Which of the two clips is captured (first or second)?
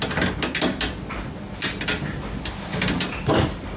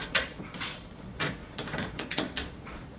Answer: first